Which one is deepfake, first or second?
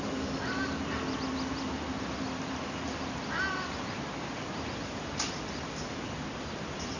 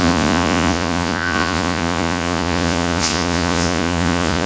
second